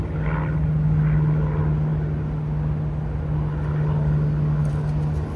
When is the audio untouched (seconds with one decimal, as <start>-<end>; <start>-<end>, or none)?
0.0-5.4